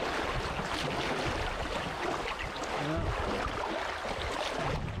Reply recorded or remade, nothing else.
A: recorded